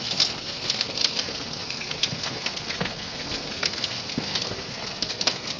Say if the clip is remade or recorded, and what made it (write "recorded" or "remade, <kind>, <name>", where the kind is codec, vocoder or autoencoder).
remade, codec, SNAC